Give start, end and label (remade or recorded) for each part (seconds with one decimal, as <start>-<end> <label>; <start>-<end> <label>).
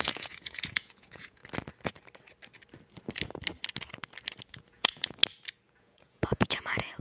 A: 0.0-1.4 remade; 1.4-4.5 recorded; 4.5-5.2 remade; 5.2-5.8 recorded; 5.8-7.0 remade